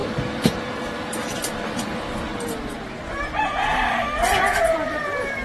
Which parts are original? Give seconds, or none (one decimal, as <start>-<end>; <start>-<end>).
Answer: 0.0-5.4